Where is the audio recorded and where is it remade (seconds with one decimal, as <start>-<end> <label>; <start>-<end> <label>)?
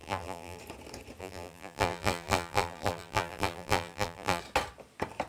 0.0-0.6 remade; 0.6-1.2 recorded; 1.2-4.4 remade; 4.4-5.3 recorded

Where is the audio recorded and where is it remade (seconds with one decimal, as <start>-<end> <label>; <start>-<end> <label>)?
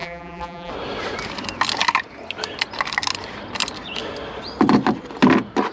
0.0-0.7 remade; 0.7-5.7 recorded